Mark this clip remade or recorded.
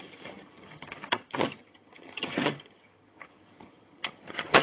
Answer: remade